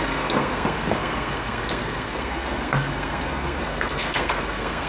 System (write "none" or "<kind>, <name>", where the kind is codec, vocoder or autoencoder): codec, SNAC